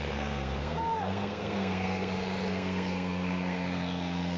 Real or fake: fake